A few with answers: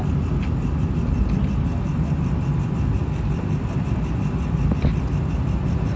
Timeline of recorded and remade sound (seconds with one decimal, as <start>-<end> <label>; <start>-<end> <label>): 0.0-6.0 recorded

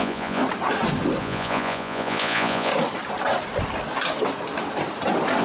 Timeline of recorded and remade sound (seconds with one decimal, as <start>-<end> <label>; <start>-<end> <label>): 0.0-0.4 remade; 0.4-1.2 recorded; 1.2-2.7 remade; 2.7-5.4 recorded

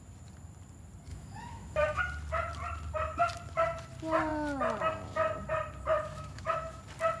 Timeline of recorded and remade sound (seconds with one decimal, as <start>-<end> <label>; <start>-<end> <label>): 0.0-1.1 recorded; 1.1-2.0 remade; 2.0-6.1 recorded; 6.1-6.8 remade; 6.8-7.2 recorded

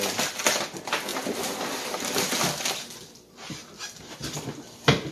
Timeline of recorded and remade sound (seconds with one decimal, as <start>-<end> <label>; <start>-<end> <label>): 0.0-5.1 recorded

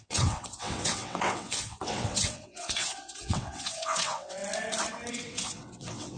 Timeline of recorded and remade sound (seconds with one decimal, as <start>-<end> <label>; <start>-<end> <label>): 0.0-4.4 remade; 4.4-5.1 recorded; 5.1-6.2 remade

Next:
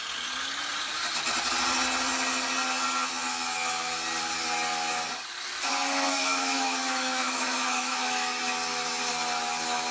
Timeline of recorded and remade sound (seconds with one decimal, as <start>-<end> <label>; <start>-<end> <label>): 0.0-5.7 recorded; 5.7-8.4 remade; 8.4-9.9 recorded

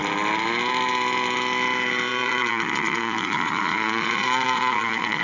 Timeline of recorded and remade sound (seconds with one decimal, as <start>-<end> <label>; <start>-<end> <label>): 0.0-2.1 recorded; 2.1-5.2 remade

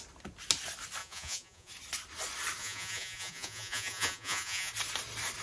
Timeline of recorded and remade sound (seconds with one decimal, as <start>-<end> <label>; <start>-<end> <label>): 0.0-1.0 recorded; 1.0-1.7 remade; 1.7-2.6 recorded; 2.6-4.7 remade; 4.7-5.4 recorded